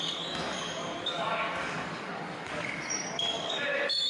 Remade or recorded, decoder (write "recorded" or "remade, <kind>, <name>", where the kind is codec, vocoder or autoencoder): remade, codec, DAC